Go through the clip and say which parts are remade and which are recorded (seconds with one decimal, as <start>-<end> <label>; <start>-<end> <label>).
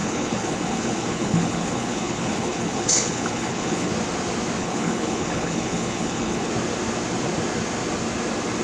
0.0-3.9 remade; 3.9-4.6 recorded; 4.6-6.5 remade; 6.5-8.6 recorded